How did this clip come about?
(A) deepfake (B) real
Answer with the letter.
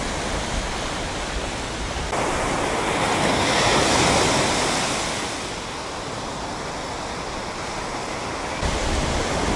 B